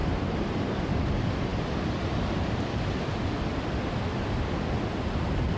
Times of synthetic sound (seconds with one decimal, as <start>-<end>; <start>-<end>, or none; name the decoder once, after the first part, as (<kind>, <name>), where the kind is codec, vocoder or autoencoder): 0.0-1.1 (vocoder, BigVGAN v2)